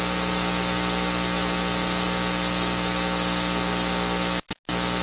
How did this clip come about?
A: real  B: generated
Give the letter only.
A